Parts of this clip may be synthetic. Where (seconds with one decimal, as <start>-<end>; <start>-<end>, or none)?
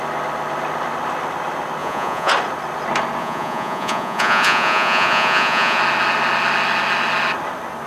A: 1.8-2.3; 3.2-5.8